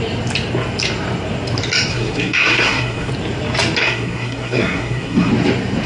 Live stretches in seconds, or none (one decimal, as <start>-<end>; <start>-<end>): 0.0-1.9; 3.1-3.8; 5.3-5.9